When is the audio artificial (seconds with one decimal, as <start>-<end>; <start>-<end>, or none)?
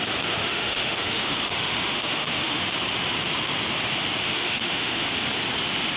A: 0.4-2.7; 4.2-5.1